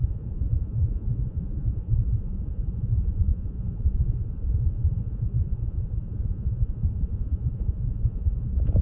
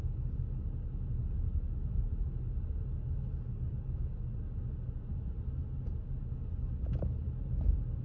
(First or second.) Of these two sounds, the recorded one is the second